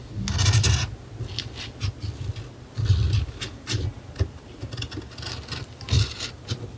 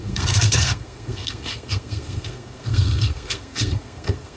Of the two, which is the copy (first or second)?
second